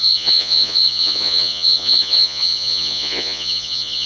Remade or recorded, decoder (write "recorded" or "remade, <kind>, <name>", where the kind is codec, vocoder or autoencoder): remade, vocoder, Vocos